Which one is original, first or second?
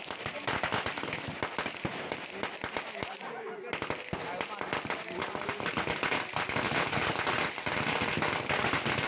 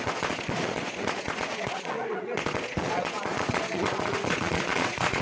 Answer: first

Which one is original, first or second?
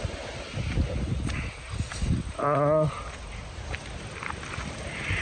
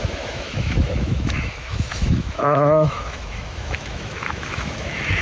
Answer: first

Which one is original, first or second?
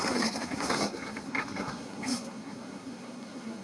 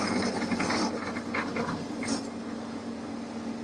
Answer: second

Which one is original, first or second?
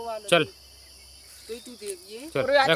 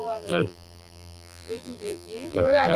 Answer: first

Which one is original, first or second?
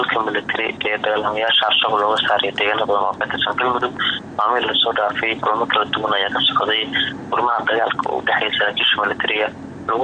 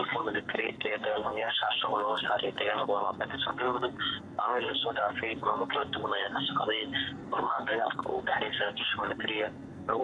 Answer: first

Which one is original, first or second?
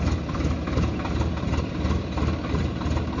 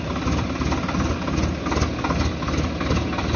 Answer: second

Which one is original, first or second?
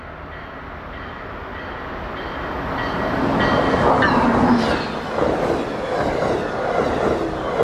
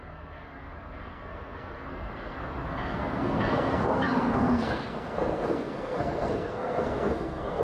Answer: first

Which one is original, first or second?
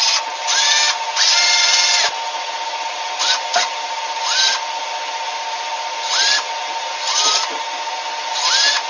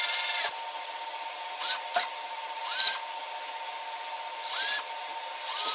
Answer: first